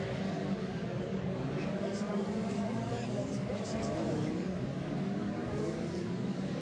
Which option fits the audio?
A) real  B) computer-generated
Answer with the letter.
B